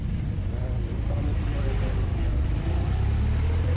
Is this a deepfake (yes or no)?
yes